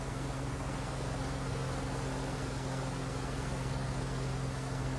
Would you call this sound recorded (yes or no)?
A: no